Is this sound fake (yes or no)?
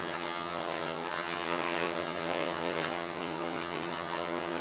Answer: yes